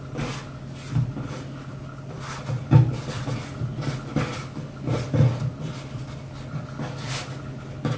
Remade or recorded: recorded